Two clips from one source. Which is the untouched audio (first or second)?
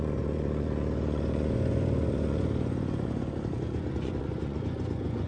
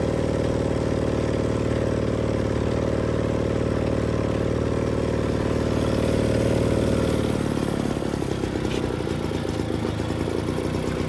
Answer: second